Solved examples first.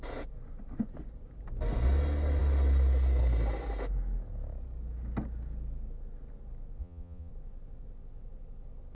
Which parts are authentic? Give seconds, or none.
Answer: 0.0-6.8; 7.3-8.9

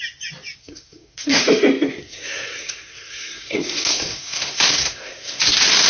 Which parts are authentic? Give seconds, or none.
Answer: 0.0-0.6; 1.4-1.9; 5.4-5.9

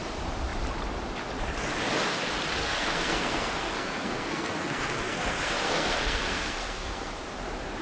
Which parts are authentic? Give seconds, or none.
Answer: 0.0-2.6; 7.1-7.8

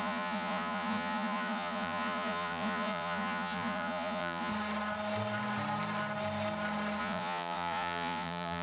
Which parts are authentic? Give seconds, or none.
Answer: 4.5-7.0

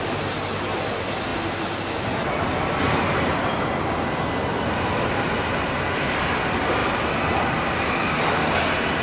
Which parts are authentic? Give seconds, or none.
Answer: 0.0-9.0

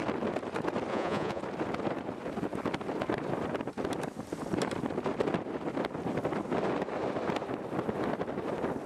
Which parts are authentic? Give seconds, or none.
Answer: 0.0-0.9; 1.4-8.9

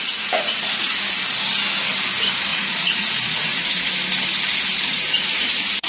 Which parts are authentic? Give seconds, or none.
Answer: 0.9-2.5; 3.9-4.9